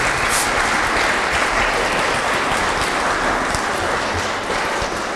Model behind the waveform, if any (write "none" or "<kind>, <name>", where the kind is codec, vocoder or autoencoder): none